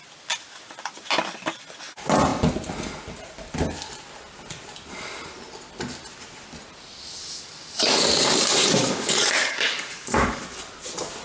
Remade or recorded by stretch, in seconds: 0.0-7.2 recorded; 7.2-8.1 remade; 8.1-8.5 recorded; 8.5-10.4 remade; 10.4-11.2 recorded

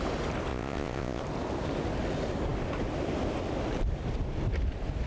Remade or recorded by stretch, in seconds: 0.0-0.5 recorded; 0.5-1.2 remade; 1.2-5.1 recorded

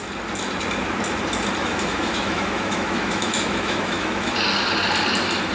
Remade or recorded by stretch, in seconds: 0.0-1.6 recorded; 1.6-4.3 remade; 4.3-5.5 recorded

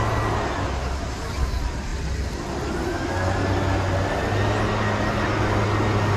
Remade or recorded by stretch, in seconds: 0.0-6.2 recorded